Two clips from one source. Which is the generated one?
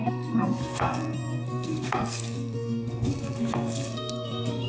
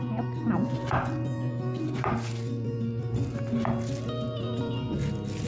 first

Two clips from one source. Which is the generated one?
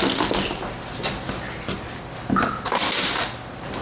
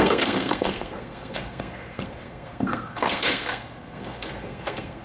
second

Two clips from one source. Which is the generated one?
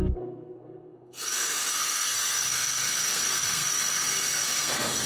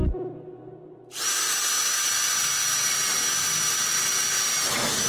first